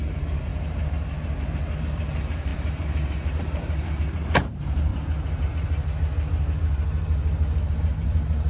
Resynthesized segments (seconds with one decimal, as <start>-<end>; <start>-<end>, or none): 0.0-4.9; 7.7-8.5